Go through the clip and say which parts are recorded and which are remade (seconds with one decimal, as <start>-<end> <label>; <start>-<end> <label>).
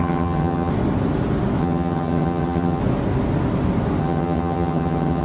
0.0-0.7 remade; 0.7-1.6 recorded; 1.6-2.8 remade; 2.8-4.0 recorded; 4.0-5.2 remade